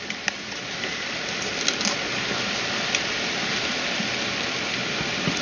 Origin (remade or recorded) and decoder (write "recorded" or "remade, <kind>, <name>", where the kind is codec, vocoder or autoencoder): recorded